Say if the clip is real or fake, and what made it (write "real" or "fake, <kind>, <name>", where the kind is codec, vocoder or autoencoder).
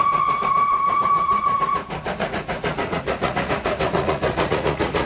fake, vocoder, Vocos